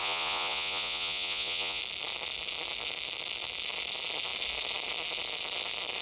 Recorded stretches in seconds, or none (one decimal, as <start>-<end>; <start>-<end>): 1.8-6.0